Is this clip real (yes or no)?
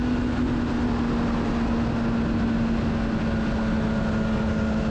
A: yes